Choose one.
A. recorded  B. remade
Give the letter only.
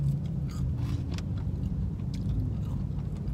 A